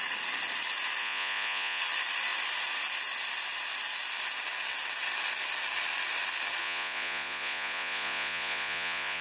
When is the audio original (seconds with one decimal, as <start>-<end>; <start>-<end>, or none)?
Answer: 0.0-1.0; 1.8-6.6

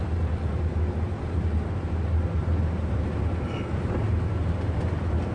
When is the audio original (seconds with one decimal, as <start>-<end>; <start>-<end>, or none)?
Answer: 0.0-5.3

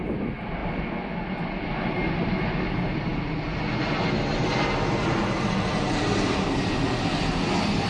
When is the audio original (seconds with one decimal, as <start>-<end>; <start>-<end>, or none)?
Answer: 0.0-7.9

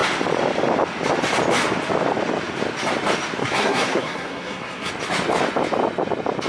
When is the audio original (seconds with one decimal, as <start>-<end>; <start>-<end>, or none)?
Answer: 0.0-3.4; 4.9-6.5

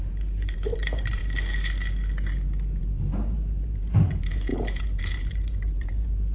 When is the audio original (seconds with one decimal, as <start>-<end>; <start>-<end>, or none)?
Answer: 1.2-2.8

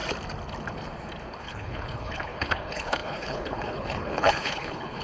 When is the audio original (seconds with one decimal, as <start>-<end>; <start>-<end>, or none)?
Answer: 0.0-1.4